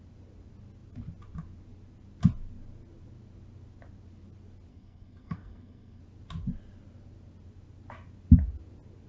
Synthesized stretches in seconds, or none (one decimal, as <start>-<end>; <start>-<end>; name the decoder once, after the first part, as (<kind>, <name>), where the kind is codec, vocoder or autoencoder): 4.7-6.0 (codec, SNAC)